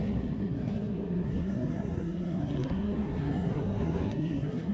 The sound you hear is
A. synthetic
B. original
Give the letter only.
A